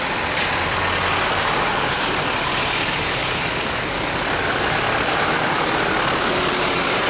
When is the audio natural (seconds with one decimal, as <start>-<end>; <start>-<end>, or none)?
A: 0.0-3.2